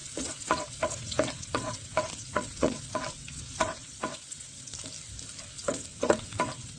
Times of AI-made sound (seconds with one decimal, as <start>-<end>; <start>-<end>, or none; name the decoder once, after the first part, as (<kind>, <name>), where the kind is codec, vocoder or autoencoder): 0.0-4.7 (vocoder, WaveNeXt); 5.4-6.8